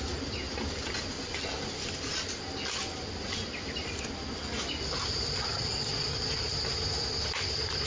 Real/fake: real